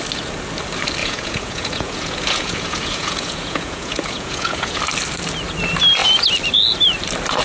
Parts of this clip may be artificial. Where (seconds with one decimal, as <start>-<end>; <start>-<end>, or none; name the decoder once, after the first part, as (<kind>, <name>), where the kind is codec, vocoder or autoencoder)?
1.0-4.8 (vocoder, Vocos)